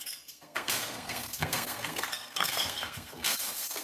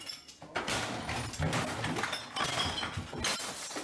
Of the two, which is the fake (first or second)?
first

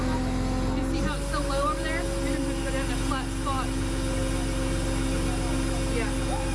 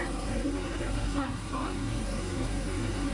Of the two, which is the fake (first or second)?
second